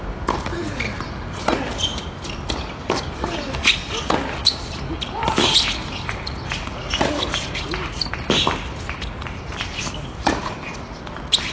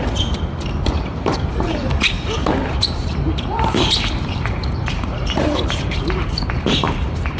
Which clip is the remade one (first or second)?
second